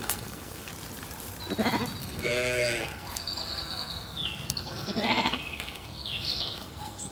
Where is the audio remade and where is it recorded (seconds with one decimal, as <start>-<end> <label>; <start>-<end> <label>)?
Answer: 0.0-0.7 remade; 0.7-2.0 recorded; 2.0-7.1 remade